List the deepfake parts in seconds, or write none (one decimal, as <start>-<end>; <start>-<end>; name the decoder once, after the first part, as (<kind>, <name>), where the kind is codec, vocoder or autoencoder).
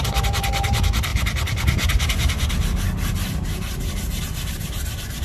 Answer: none